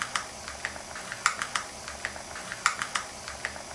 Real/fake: real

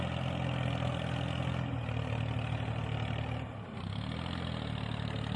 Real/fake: real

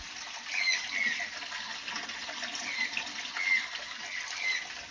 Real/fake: real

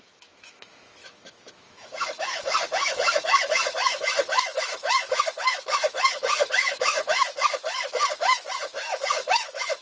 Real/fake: fake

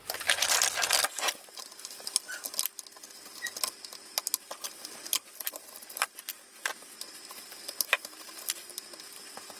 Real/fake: real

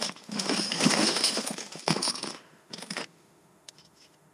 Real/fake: fake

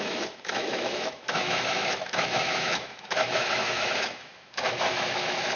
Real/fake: fake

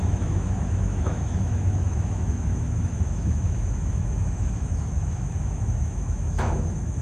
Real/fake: fake